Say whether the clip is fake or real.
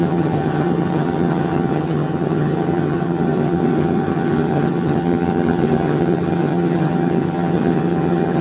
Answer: fake